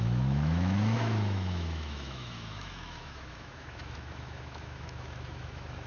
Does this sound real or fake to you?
fake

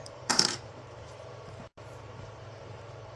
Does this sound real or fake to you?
fake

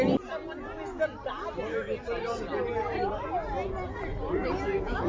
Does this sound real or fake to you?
real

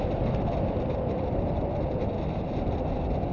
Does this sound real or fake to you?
real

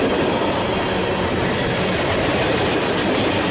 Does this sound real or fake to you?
real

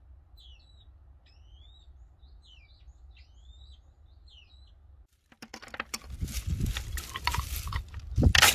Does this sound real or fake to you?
real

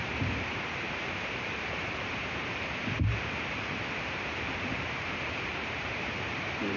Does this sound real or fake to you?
fake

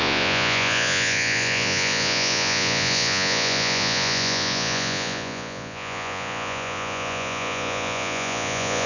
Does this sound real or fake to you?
fake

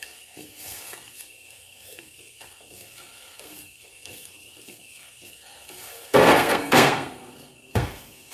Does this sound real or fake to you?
fake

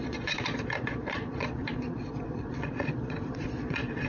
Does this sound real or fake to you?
fake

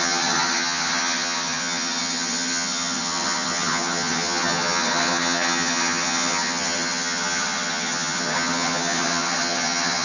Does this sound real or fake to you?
fake